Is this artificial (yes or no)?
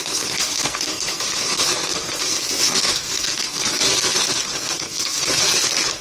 yes